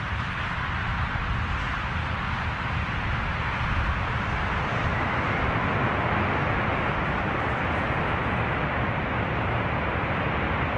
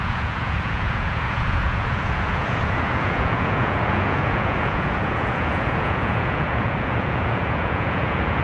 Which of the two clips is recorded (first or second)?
first